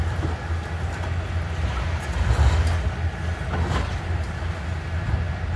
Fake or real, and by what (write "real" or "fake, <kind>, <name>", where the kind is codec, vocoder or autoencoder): real